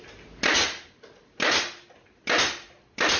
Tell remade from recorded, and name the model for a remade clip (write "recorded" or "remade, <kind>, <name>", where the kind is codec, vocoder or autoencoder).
recorded